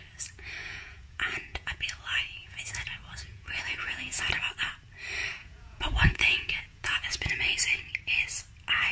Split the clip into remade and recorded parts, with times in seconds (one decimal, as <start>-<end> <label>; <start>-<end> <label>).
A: 0.0-0.6 recorded; 0.6-4.2 remade; 4.2-5.4 recorded; 5.4-7.3 remade; 7.3-8.9 recorded